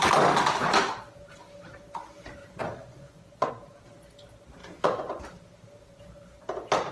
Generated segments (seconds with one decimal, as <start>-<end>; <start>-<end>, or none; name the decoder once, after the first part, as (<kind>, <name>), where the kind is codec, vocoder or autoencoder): 2.4-3.5 (vocoder, Vocos); 4.6-5.2